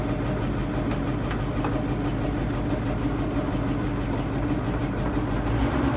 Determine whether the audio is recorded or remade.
recorded